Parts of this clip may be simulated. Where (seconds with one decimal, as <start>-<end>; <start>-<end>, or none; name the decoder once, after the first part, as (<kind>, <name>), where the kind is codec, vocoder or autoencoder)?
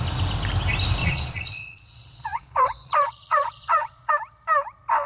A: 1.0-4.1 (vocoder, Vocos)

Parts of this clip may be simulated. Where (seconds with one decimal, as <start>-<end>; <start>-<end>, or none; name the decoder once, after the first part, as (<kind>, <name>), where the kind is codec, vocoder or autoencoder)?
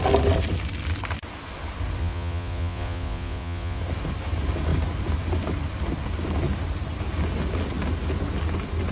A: 2.0-3.8 (vocoder, Vocos)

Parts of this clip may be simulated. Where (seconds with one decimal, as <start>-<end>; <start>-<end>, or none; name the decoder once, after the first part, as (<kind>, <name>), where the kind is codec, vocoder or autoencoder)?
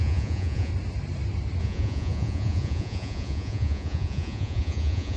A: 0.0-0.7 (vocoder, Vocos); 1.6-5.2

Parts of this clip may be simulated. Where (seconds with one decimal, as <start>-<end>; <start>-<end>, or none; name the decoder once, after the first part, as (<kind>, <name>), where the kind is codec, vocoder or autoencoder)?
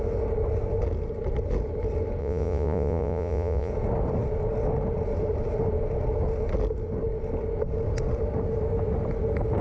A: 2.2-3.7 (vocoder, Vocos)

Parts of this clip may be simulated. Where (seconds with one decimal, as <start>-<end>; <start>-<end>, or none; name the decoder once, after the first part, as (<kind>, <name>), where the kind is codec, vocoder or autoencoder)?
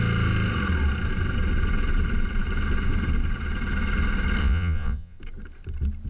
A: 4.4-5.2 (vocoder, Vocos)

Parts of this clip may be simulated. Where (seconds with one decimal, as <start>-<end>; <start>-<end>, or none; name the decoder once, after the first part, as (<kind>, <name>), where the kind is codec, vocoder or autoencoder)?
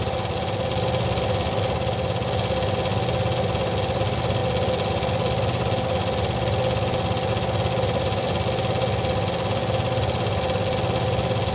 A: none